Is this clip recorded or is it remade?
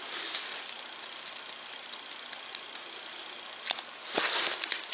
recorded